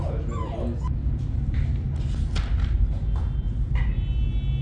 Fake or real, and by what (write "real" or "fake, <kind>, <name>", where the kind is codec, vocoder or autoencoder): real